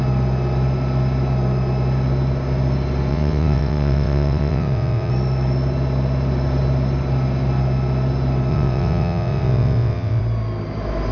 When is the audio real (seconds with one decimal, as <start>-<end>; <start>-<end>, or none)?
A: 0.0-3.1; 5.1-8.5; 10.2-11.1